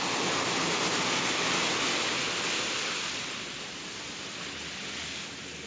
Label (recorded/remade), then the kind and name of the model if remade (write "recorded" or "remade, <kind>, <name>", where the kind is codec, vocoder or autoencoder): recorded